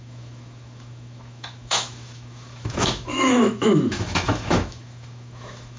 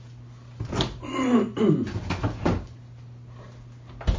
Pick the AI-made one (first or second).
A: first